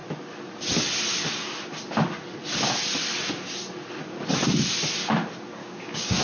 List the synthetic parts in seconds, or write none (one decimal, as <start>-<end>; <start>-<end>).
5.6-6.2

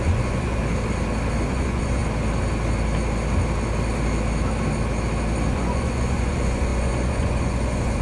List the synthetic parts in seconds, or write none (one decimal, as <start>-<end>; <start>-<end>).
0.0-0.6; 1.5-2.0; 5.5-8.0

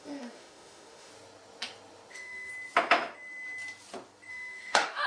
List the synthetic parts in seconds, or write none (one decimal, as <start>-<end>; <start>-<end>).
0.0-1.1; 2.1-2.5; 4.3-5.1

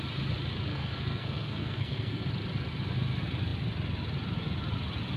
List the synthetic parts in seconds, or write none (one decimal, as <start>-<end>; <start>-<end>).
0.7-2.3

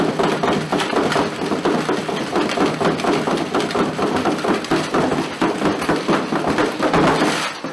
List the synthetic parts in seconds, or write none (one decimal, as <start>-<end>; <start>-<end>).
0.7-1.2

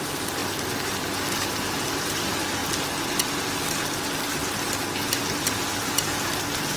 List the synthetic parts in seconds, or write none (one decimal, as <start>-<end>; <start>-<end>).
0.0-0.4; 2.0-2.6; 5.2-6.8